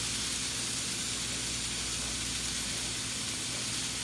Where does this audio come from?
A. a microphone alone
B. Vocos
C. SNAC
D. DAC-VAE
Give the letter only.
A